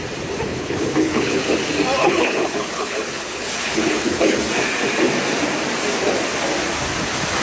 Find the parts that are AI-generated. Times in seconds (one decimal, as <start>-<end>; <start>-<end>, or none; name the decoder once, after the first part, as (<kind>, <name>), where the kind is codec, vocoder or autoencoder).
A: 0.5-1.4 (codec, HILCodec); 2.0-4.4